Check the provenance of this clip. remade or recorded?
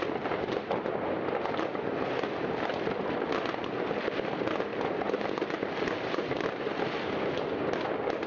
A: recorded